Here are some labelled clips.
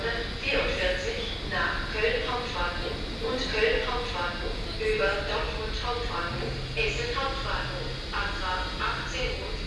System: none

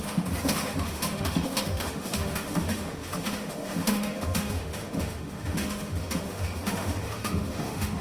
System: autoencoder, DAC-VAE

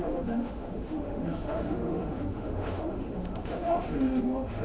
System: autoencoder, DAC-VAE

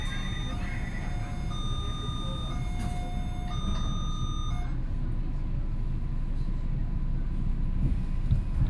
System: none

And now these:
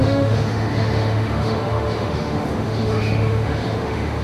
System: autoencoder, DAC-VAE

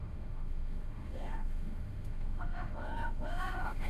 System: autoencoder, DAC-VAE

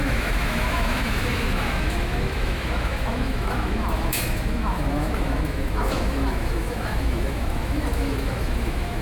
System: autoencoder, DAC-VAE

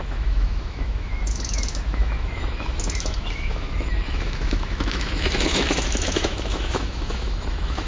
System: autoencoder, DAC-VAE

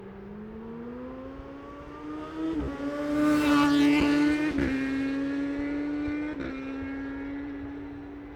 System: none